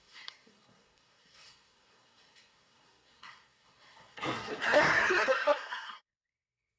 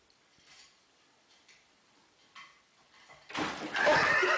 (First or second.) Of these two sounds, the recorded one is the second